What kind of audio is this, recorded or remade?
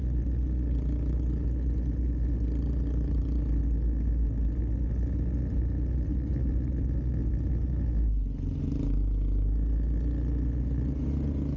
recorded